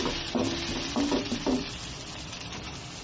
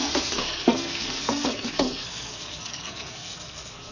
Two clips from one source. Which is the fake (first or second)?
second